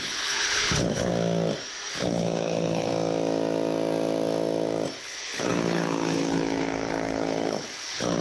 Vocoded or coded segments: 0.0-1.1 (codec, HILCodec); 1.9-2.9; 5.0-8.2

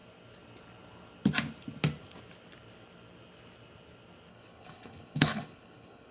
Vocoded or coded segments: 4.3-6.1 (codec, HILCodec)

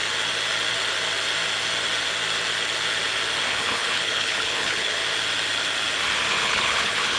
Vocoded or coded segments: 3.5-5.0 (codec, HILCodec); 6.4-7.2

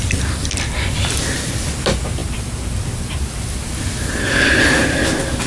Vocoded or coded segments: none